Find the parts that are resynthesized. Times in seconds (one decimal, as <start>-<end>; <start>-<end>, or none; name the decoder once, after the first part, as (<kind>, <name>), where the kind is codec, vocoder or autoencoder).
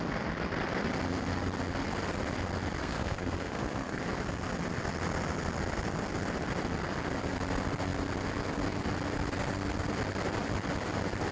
2.8-4.0 (codec, SNAC)